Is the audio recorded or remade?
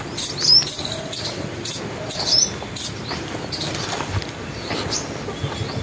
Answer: recorded